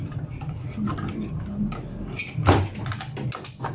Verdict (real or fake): real